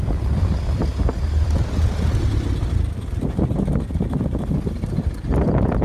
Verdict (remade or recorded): recorded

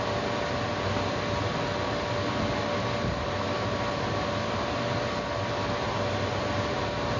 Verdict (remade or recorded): recorded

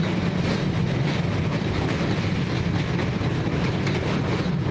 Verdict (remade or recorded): remade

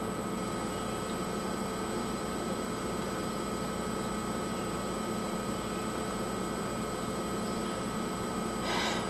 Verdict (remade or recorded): remade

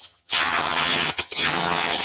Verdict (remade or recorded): remade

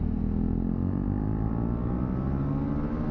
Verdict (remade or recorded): recorded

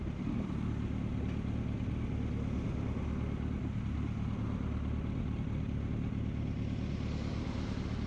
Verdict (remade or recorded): recorded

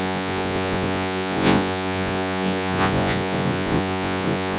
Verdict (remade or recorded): remade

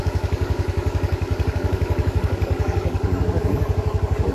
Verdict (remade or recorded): remade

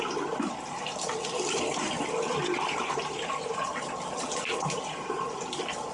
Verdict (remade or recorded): remade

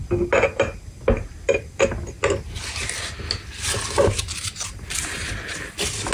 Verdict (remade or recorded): recorded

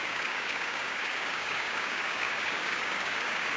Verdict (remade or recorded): remade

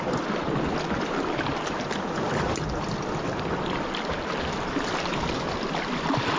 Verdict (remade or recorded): recorded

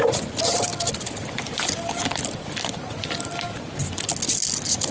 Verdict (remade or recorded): recorded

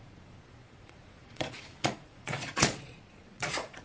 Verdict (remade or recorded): remade